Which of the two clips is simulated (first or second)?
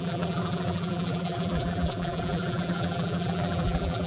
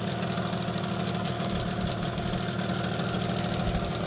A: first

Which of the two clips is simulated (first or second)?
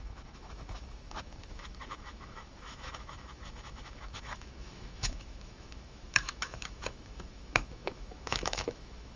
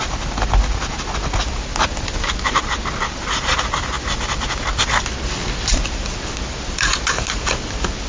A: first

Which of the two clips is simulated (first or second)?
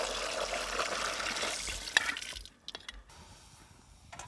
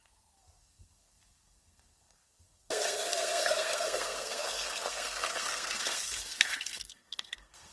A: second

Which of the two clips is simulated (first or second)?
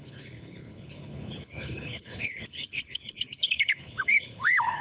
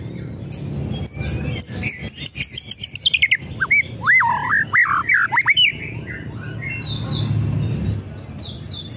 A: first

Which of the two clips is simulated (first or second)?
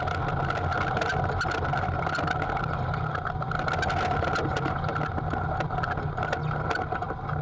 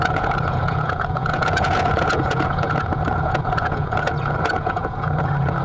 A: second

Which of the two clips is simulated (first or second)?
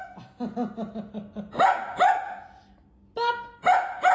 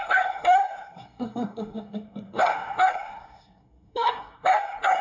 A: second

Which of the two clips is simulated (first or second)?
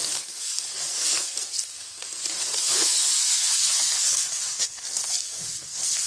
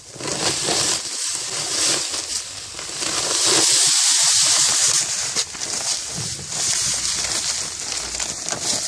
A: first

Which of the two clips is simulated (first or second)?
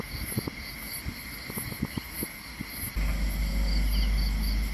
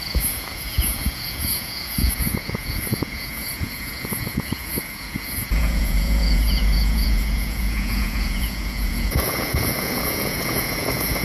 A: second